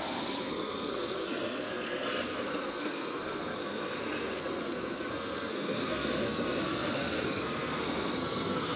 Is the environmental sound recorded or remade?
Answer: remade